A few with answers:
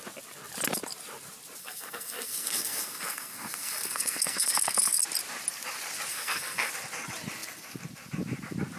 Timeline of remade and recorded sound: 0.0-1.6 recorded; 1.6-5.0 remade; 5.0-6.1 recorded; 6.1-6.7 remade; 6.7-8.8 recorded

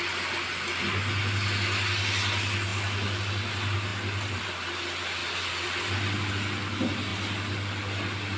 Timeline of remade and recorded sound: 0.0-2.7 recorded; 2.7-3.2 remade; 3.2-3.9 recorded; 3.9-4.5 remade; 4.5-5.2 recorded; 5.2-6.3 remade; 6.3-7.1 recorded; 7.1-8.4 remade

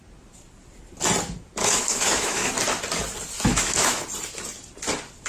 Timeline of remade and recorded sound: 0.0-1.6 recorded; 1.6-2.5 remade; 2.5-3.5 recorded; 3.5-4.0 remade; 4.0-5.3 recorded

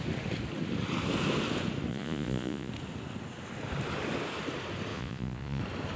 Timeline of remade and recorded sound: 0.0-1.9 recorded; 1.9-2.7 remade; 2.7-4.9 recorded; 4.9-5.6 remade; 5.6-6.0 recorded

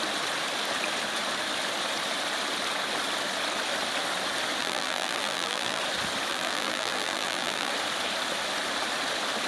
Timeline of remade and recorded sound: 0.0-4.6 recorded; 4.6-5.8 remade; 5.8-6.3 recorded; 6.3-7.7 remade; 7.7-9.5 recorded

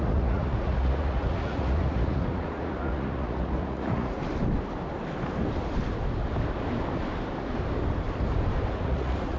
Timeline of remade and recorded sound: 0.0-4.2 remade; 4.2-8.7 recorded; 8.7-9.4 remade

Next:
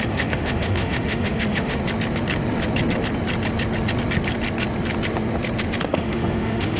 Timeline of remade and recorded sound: 0.0-1.8 remade; 1.8-5.8 recorded; 5.8-6.8 remade

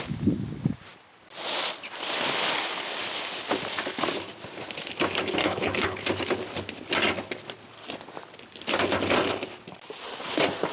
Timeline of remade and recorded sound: 0.0-5.4 recorded; 5.4-6.0 remade; 6.0-10.7 recorded